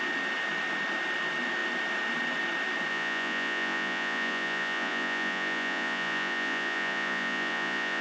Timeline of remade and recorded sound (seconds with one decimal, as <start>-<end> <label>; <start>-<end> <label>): 0.0-2.9 recorded; 2.9-8.0 remade